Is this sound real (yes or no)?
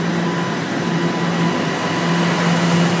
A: yes